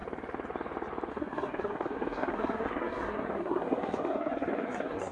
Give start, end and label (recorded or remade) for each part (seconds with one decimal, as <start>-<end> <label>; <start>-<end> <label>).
0.0-1.1 recorded; 1.1-5.1 remade